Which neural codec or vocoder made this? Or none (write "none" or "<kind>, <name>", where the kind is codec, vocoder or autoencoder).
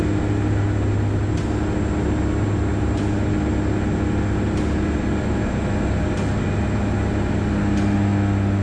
none